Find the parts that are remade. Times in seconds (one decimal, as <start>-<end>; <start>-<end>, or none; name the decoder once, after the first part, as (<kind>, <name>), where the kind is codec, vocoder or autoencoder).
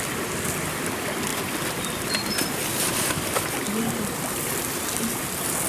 0.0-5.7 (vocoder, BigVGAN v2)